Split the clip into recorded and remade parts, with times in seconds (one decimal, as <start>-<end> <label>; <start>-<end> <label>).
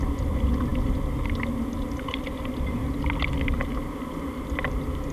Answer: 0.0-5.1 recorded